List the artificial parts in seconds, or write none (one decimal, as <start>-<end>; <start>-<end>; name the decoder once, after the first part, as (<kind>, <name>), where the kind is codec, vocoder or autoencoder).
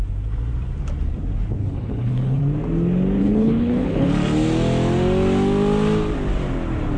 1.6-2.4 (codec, HILCodec); 3.2-4.1